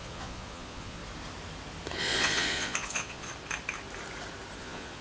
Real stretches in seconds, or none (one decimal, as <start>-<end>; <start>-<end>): 1.0-2.0; 3.3-4.6